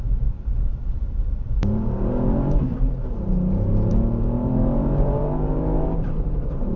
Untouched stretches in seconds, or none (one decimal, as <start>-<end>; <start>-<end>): 2.7-3.9